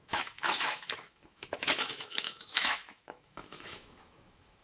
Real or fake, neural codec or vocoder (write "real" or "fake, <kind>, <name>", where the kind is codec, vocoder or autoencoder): fake, autoencoder, DAC-VAE